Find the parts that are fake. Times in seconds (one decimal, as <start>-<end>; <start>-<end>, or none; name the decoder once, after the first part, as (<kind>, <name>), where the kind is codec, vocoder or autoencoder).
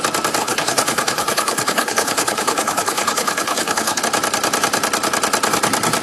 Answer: 0.4-4.0 (codec, HILCodec)